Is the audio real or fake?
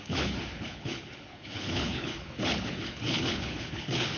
fake